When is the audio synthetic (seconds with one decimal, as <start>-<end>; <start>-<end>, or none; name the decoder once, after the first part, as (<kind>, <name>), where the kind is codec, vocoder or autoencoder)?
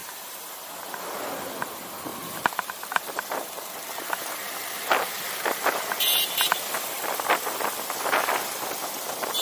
2.1-5.1 (vocoder, BigVGAN v2)